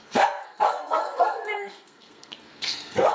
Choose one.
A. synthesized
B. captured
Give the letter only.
A